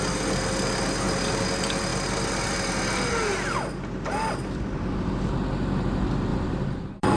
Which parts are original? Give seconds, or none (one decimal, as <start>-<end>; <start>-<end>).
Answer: 0.0-6.3